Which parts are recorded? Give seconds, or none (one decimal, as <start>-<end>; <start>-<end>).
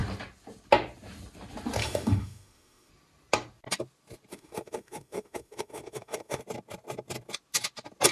0.0-1.8; 2.9-4.3; 6.4-8.1